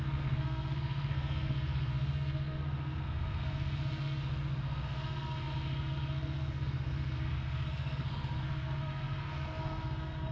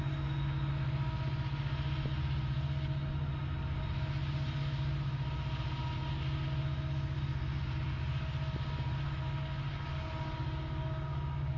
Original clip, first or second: second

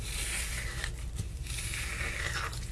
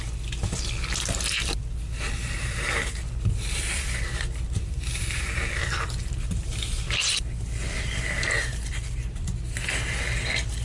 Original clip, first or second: first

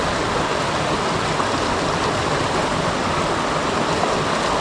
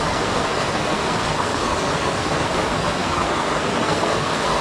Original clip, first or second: first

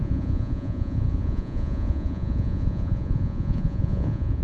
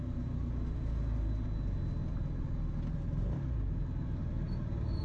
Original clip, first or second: second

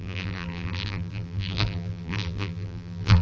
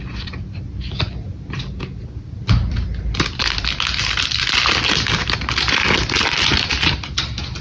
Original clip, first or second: second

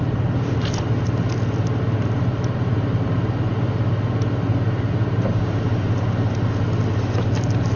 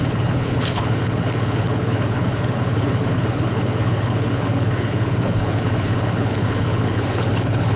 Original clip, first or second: first